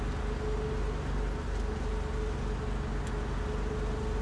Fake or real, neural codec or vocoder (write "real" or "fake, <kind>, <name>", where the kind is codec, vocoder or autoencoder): real